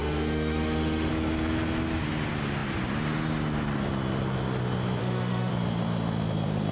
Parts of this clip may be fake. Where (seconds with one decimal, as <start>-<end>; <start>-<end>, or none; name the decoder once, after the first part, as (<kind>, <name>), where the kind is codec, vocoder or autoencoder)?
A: 0.0-1.1 (autoencoder, DAC-VAE); 5.0-5.5